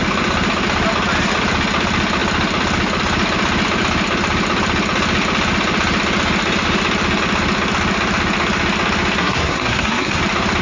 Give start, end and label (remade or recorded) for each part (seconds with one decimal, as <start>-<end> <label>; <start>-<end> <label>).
0.0-9.2 recorded; 9.2-10.2 remade; 10.2-10.6 recorded

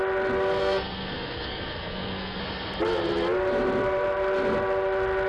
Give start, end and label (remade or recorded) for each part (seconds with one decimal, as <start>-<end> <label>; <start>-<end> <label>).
0.0-0.6 recorded; 0.6-2.4 remade; 2.4-5.3 recorded

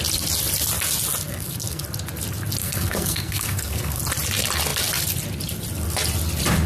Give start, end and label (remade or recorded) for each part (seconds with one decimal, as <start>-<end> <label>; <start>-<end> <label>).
0.0-1.3 recorded; 1.3-1.8 remade; 1.8-2.6 recorded; 2.6-4.0 remade; 4.0-6.7 recorded

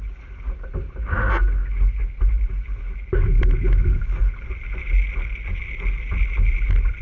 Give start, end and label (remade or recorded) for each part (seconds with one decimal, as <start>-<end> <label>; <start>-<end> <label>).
0.0-7.0 recorded

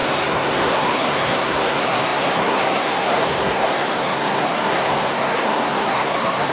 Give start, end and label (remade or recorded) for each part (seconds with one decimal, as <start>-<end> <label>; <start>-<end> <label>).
0.0-6.5 remade

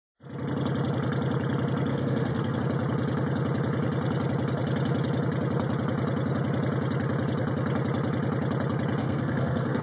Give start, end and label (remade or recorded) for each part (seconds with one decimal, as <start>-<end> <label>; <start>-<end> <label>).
0.0-1.9 recorded; 1.9-2.6 remade; 2.6-9.0 recorded; 9.0-9.8 remade

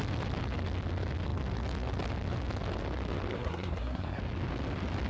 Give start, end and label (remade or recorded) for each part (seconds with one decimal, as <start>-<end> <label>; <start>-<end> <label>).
0.0-3.3 recorded; 3.3-4.2 remade; 4.2-5.1 recorded

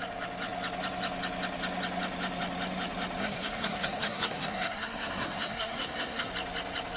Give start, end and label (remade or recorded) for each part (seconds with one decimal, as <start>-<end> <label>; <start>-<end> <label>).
0.0-3.2 recorded; 3.2-6.3 remade; 6.3-7.0 recorded